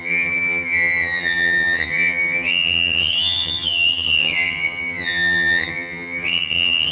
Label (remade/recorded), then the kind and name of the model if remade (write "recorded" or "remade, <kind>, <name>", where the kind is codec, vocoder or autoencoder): remade, vocoder, HiFi-GAN